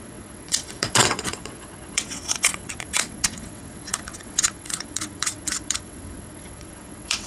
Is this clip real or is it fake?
fake